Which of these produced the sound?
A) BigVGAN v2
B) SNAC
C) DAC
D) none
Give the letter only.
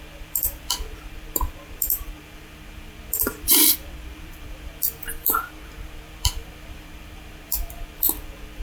A